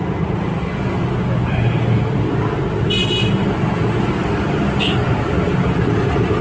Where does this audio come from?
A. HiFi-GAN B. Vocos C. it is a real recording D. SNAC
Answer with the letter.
C